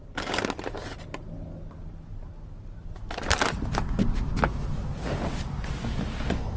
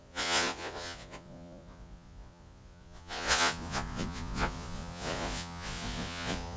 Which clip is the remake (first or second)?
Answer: second